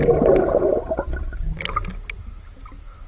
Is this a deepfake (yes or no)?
no